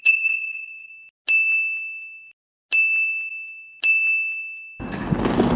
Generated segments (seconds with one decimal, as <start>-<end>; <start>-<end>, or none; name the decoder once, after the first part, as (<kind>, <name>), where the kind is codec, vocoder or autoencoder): 0.0-0.9 (vocoder, Vocos)